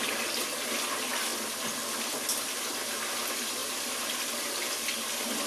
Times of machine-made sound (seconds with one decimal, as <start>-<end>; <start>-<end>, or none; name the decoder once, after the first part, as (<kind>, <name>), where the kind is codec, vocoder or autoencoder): 0.0-1.3 (vocoder, BigVGAN v2); 2.2-3.6; 4.5-5.5